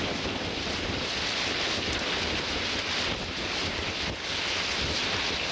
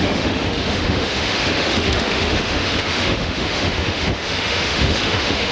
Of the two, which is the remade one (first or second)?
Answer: second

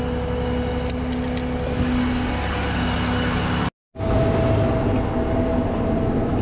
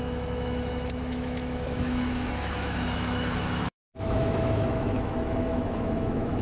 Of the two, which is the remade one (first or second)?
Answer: second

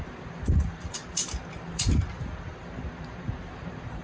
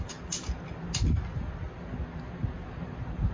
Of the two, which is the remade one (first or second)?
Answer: first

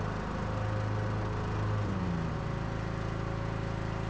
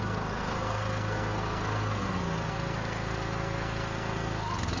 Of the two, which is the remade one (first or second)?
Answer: second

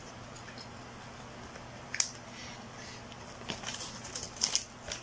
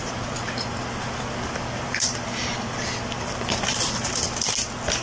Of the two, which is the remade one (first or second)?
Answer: second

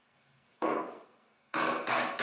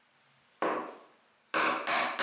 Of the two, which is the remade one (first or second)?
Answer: first